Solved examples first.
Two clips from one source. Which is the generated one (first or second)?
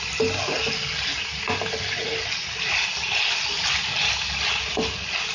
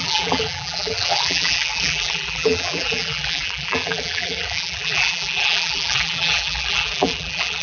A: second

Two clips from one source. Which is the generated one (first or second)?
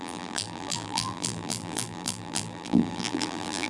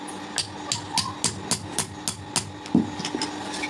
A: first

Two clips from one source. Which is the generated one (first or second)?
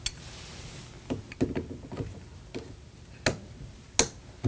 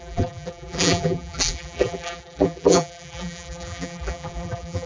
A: second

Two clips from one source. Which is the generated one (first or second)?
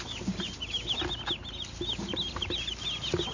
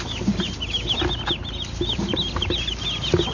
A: second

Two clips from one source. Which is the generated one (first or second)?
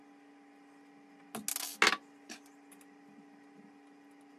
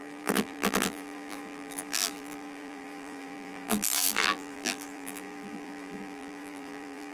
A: second